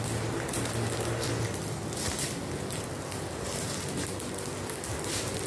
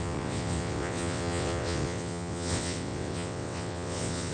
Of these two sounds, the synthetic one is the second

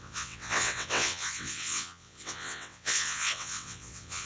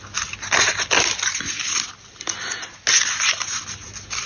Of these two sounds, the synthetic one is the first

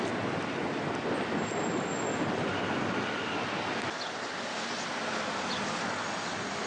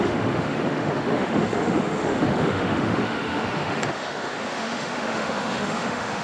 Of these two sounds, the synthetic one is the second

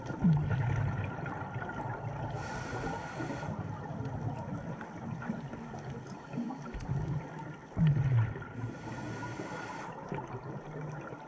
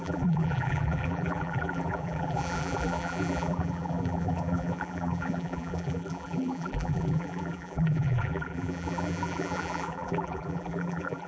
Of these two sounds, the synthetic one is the second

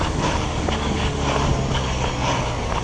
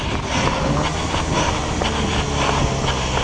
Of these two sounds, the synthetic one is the first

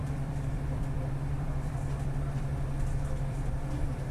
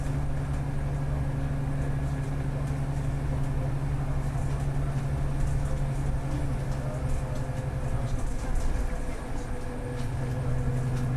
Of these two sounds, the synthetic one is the first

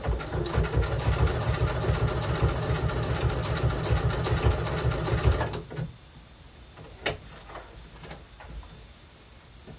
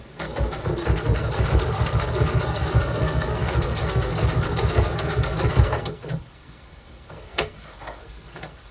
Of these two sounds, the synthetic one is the second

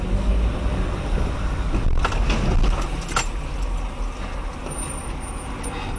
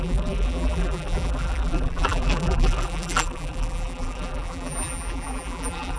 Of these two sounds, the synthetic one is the second